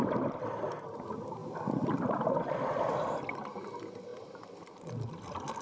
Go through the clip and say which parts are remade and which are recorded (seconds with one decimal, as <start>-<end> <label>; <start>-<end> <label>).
0.0-5.6 recorded